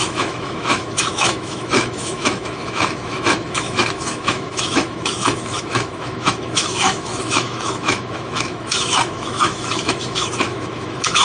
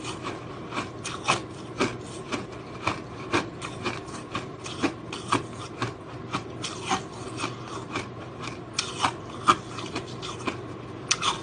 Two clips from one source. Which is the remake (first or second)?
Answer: first